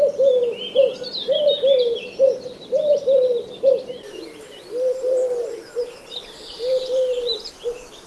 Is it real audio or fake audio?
fake